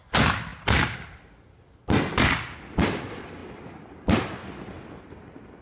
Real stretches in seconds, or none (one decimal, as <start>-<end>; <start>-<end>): 0.0-5.6